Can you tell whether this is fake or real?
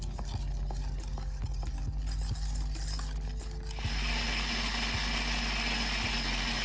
real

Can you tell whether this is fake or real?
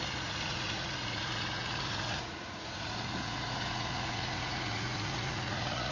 fake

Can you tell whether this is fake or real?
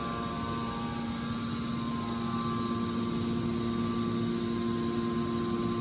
real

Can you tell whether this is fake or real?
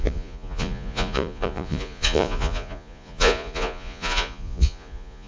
fake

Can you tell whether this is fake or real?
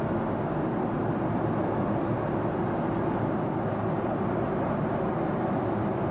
real